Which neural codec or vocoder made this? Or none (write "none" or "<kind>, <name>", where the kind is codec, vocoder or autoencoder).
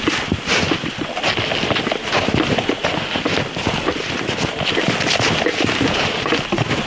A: none